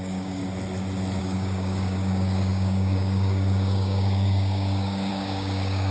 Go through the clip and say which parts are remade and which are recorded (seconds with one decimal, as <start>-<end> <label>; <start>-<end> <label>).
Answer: 0.0-0.4 remade; 0.4-1.2 recorded; 1.2-5.9 remade